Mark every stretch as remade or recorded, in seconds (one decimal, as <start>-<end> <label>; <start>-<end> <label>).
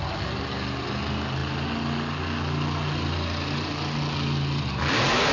0.0-5.3 recorded